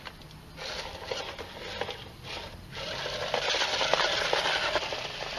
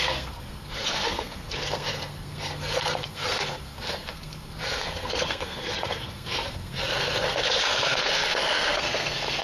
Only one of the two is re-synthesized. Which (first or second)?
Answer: second